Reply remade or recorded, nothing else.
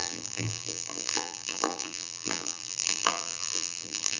remade